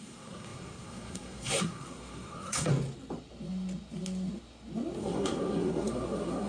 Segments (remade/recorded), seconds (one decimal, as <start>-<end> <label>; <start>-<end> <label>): 0.0-2.7 remade; 2.7-5.0 recorded; 5.0-6.5 remade